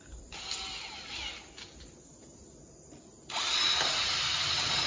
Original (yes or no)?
yes